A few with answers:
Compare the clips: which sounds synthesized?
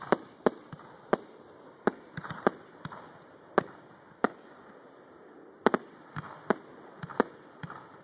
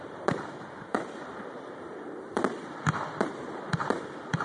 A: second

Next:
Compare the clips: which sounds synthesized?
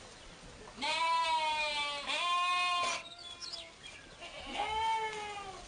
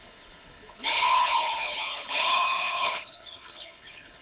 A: second